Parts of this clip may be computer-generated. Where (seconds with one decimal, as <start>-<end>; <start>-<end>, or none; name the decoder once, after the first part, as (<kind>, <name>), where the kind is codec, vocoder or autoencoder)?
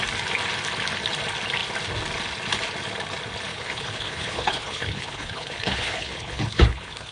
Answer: 3.5-7.1 (codec, HILCodec)